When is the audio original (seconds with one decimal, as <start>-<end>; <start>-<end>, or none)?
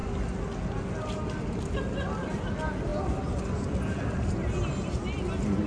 0.0-5.7